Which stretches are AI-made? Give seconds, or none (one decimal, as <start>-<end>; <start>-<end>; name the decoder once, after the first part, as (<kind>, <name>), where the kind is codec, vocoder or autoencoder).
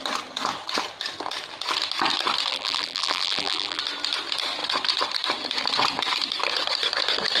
2.5-3.8 (vocoder, BigVGAN v2)